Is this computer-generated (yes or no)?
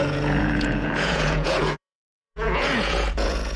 yes